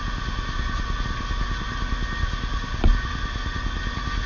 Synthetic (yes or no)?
no